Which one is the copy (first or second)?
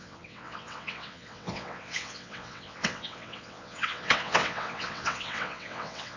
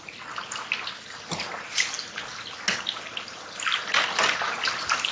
first